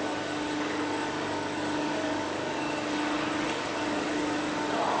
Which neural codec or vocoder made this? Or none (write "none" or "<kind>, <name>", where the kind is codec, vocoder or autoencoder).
codec, DAC